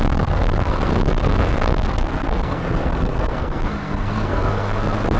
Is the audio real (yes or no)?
no